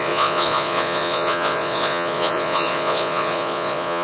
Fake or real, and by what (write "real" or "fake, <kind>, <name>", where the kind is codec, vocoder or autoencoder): fake, vocoder, Vocos